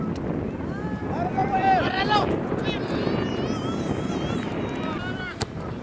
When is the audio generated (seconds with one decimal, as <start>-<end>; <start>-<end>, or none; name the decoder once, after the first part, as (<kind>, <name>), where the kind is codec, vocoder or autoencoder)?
1.4-4.6 (vocoder, BigVGAN v2)